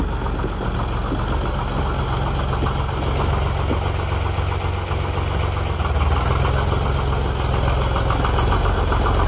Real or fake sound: real